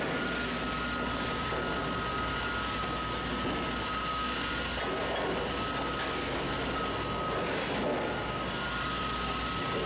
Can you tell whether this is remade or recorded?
recorded